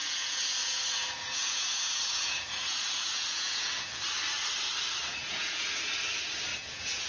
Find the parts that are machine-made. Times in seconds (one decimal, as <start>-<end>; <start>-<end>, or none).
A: 0.0-4.0; 5.1-5.7; 6.5-7.1

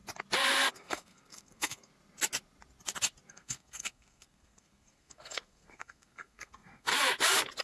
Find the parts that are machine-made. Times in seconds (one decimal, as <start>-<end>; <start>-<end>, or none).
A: 0.7-1.9; 3.3-6.9

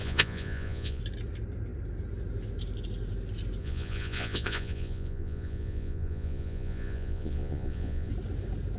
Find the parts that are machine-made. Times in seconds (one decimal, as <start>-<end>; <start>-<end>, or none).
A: 0.0-1.0; 3.6-8.1

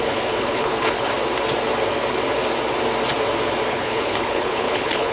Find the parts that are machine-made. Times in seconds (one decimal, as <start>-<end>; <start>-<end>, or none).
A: 0.0-1.1; 3.7-5.1

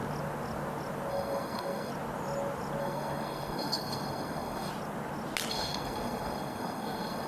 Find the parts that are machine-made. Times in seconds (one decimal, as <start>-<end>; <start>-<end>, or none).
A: 1.1-1.9; 2.8-4.7; 5.5-7.3

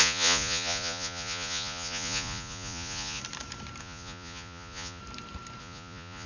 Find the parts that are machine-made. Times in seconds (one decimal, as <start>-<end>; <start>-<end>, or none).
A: 0.0-3.2; 3.8-5.0; 5.6-6.3

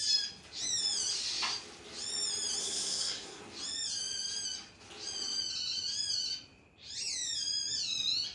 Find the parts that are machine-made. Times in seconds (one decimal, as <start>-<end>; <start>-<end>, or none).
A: 2.6-3.4